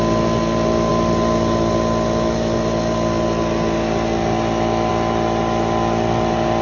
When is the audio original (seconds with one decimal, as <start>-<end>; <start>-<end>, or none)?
0.0-6.6